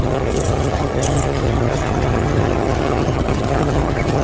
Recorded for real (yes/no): no